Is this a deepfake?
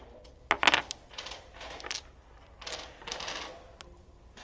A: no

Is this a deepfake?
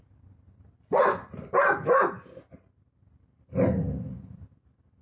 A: no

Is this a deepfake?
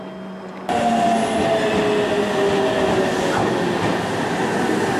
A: no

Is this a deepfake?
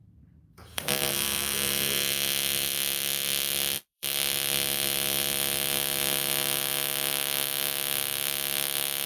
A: yes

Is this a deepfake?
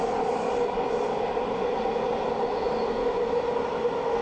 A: no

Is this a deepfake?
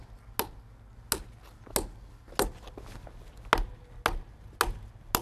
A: no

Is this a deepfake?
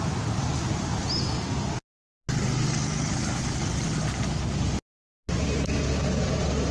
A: no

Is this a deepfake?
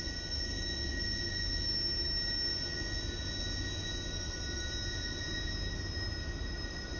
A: no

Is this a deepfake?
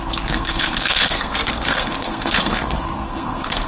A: yes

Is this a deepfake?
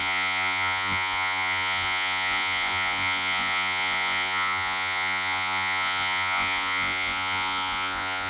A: yes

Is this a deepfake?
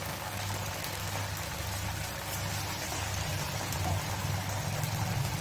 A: no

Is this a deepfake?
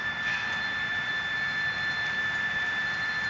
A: no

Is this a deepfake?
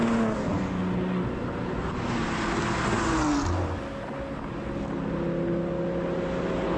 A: no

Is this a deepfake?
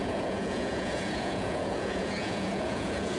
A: yes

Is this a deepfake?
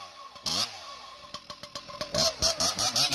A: yes